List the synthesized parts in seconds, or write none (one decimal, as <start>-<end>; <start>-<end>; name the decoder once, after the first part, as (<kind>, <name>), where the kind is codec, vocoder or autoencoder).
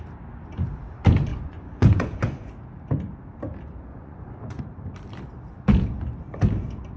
1.3-2.5 (vocoder, Vocos); 3.9-4.6